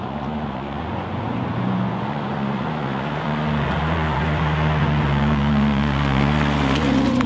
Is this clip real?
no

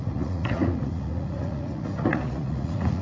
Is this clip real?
no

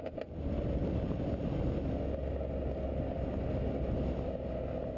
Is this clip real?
yes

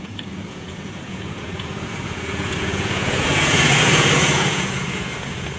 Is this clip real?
no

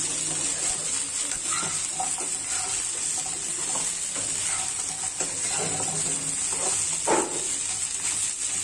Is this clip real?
yes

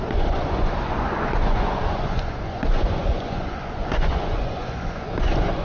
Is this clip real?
no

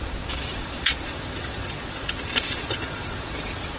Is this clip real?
no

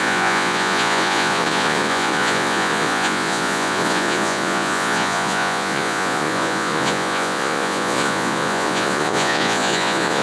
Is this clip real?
no